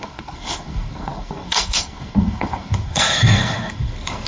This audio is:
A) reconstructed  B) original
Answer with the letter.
A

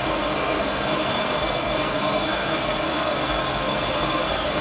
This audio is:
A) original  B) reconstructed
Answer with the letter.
B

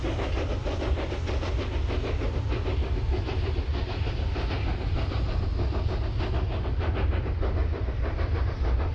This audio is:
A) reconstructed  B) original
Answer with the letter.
B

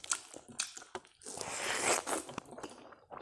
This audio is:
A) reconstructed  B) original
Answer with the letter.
B